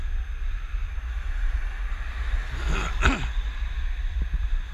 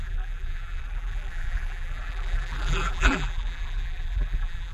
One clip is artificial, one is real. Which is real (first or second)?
first